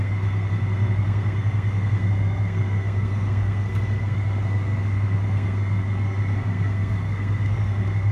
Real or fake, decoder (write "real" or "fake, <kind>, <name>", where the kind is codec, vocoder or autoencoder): fake, codec, SNAC